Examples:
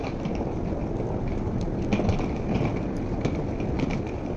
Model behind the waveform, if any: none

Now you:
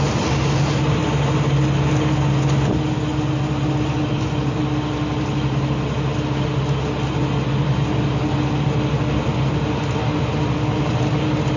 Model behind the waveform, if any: none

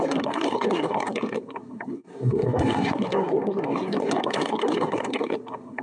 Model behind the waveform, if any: codec, SNAC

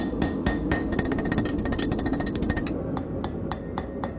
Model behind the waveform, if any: vocoder, BigVGAN v2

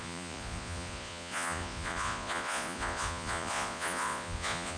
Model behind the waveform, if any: vocoder, Vocos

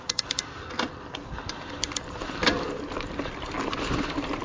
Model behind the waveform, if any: vocoder, BigVGAN v2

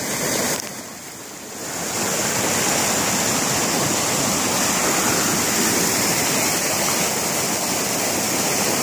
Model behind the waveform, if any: none